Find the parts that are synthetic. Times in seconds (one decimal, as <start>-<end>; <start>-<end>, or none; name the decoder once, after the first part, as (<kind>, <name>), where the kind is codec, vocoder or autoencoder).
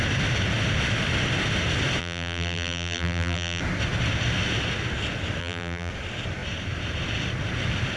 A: 2.0-3.6 (vocoder, BigVGAN v2); 5.4-5.9